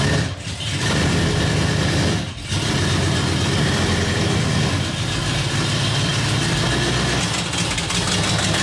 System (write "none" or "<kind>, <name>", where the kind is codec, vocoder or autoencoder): none